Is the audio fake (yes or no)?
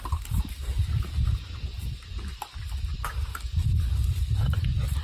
no